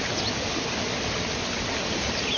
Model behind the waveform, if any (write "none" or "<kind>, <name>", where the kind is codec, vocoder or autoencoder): none